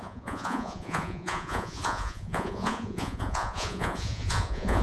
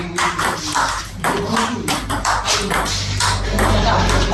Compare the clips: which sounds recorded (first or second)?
second